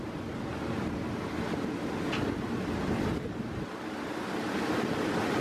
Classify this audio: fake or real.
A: real